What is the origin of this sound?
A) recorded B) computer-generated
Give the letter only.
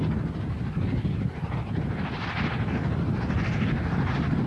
A